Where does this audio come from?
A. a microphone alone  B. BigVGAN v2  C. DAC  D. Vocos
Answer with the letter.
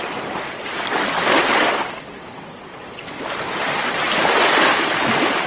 A